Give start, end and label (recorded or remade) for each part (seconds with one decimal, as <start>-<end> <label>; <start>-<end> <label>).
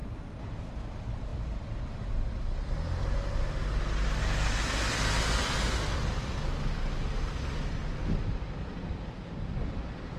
0.0-10.2 recorded